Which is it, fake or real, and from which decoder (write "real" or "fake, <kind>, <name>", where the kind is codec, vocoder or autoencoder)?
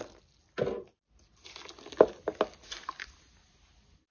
real